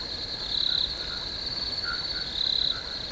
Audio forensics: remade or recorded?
recorded